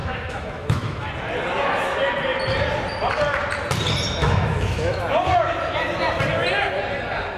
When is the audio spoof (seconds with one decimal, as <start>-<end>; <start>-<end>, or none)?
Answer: 0.0-1.1; 4.2-5.0